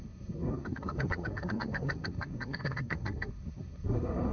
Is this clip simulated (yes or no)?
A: yes